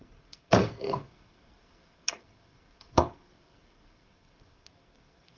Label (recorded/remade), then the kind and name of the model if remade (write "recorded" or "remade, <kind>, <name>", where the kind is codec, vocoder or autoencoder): remade, codec, SNAC